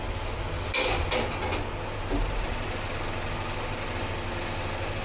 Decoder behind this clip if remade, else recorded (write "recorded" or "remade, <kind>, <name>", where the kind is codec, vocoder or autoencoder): recorded